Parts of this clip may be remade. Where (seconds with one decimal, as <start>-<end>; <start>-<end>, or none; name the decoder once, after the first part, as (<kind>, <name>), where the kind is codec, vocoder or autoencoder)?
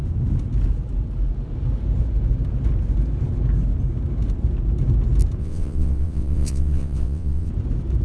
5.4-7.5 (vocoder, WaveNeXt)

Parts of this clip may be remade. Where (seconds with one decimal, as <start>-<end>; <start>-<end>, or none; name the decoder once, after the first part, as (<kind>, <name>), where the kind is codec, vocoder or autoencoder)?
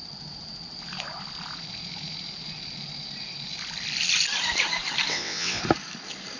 5.1-5.6 (vocoder, WaveNeXt)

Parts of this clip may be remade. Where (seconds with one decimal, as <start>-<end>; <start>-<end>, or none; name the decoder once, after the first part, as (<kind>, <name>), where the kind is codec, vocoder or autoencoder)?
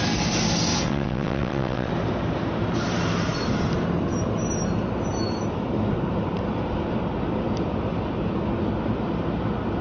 0.7-1.9 (vocoder, WaveNeXt)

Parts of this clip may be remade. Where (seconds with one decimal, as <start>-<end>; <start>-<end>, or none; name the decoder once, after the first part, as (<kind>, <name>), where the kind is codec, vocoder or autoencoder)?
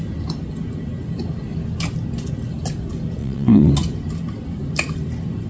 3.2-3.7 (vocoder, WaveNeXt)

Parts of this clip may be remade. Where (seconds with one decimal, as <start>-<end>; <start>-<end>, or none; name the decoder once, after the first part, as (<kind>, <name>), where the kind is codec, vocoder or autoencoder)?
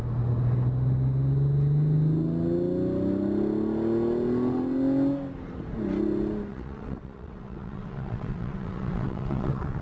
6.5-9.8 (vocoder, WaveNeXt)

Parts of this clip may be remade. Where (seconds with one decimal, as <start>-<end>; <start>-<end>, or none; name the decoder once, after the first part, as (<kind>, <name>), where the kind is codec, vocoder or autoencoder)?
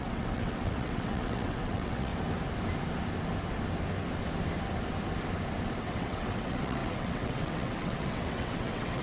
0.0-2.1 (vocoder, WaveNeXt); 5.8-9.0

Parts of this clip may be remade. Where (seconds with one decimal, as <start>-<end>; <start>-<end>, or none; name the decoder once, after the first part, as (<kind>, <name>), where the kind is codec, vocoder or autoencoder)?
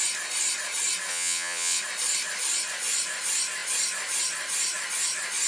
1.1-1.8 (vocoder, WaveNeXt)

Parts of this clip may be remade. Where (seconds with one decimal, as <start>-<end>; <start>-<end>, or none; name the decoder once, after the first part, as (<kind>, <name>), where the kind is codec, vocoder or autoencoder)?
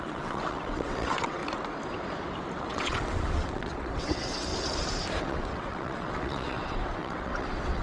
0.0-1.4 (vocoder, WaveNeXt); 2.6-4.5; 5.2-7.8